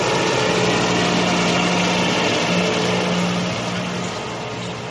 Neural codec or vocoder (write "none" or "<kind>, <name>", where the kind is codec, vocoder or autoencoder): none